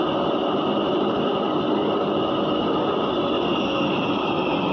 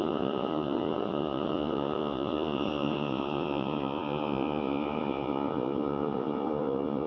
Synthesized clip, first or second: second